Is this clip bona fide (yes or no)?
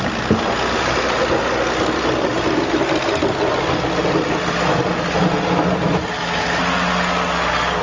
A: yes